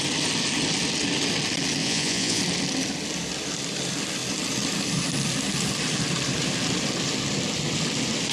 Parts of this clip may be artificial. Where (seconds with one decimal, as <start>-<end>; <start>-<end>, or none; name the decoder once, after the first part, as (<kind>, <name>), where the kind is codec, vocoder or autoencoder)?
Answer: 1.8-2.4 (vocoder, Vocos)